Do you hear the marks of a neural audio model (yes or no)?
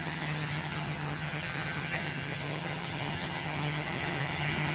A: yes